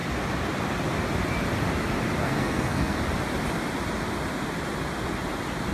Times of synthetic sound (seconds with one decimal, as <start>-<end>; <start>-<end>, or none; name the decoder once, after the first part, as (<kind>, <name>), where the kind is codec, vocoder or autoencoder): 2.2-3.0 (codec, SNAC)